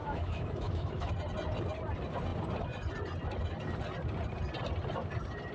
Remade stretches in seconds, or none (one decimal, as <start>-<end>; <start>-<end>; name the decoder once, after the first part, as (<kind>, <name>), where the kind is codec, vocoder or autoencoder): 0.0-1.1 (autoencoder, DAC-VAE)